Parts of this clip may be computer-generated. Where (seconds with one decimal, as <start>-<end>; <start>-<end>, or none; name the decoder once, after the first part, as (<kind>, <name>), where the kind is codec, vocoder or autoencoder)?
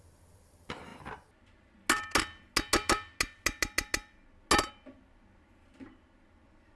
none